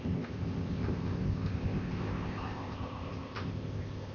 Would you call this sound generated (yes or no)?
yes